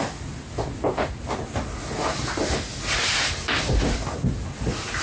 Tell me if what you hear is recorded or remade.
recorded